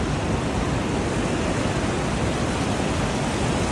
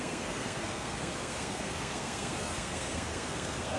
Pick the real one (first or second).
first